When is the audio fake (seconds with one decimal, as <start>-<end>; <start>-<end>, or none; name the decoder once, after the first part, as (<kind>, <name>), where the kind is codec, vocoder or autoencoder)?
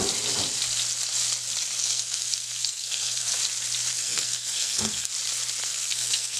1.8-3.4 (codec, SNAC); 3.9-5.1; 5.6-6.4